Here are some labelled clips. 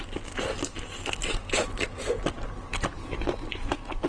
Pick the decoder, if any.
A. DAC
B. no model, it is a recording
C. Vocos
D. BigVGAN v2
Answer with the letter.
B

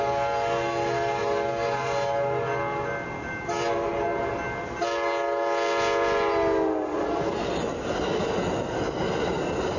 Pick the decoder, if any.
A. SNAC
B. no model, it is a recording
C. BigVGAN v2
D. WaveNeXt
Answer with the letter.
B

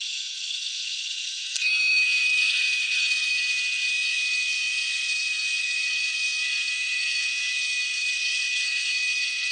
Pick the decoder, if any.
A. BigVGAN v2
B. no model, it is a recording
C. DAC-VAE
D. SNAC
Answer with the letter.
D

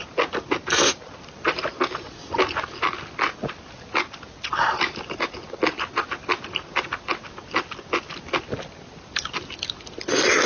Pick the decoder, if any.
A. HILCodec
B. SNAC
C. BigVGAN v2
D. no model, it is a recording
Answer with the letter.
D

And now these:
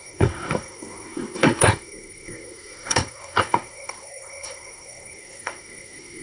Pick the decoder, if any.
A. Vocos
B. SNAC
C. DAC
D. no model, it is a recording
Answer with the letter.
B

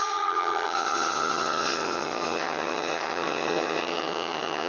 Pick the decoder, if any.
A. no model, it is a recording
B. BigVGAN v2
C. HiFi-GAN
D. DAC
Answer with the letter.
C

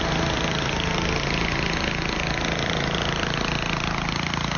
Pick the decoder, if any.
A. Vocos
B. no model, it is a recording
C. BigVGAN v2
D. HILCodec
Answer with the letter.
B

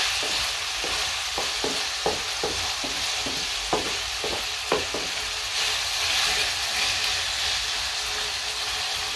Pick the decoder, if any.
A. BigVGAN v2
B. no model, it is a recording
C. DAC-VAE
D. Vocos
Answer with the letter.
B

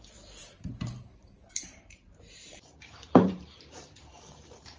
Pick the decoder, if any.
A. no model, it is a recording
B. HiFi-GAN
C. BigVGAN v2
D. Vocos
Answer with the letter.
C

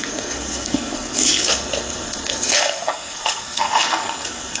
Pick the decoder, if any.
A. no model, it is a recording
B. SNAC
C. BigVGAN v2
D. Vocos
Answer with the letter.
B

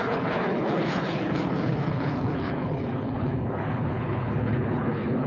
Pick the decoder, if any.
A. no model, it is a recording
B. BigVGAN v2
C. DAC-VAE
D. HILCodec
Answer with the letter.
D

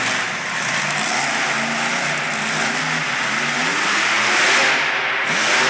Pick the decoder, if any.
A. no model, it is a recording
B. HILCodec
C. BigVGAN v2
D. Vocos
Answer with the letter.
A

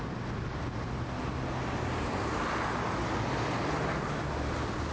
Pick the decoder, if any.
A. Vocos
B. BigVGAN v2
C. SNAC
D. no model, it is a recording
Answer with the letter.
D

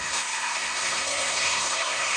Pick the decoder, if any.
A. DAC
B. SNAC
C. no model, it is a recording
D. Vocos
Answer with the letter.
B